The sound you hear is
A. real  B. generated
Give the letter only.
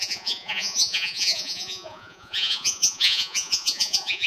B